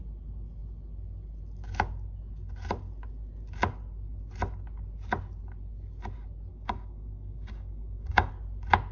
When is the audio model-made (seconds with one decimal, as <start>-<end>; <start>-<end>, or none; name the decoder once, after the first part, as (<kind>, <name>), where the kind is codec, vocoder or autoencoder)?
6.5-8.3 (codec, DAC)